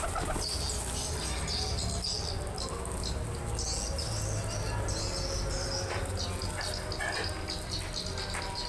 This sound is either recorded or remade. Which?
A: recorded